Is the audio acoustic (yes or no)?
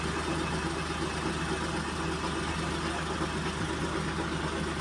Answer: yes